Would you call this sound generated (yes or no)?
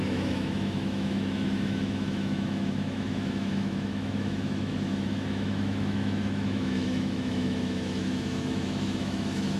yes